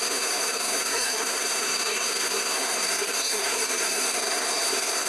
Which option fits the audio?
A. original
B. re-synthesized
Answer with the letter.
B